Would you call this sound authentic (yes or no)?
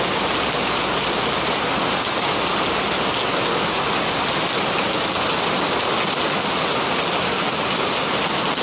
yes